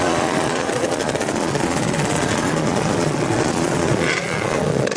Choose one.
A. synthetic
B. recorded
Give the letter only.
A